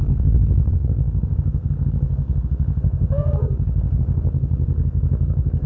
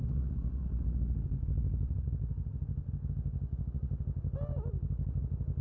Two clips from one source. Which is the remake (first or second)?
first